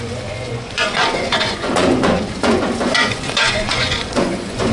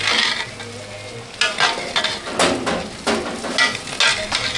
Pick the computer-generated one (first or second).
first